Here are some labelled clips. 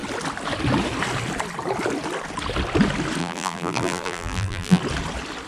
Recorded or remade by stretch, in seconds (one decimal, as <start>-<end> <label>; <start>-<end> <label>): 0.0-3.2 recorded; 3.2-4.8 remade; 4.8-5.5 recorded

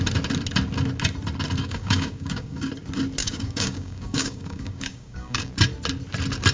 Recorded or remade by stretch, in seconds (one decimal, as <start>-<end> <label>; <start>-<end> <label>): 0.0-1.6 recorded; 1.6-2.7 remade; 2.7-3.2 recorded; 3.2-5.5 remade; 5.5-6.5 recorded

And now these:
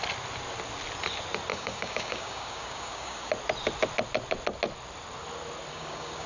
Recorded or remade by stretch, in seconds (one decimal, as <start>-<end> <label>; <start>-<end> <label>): 0.0-1.5 recorded; 1.5-3.3 remade; 3.3-5.7 recorded; 5.7-6.3 remade